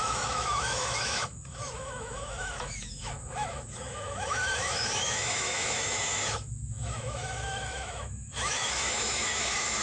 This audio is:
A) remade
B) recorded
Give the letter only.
A